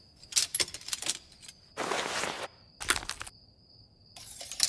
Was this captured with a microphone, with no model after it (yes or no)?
yes